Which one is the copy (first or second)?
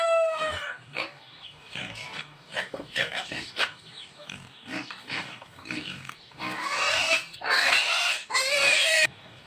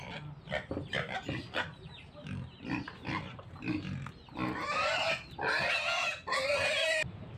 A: first